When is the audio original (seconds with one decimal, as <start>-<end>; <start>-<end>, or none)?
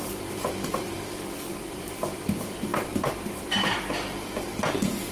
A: none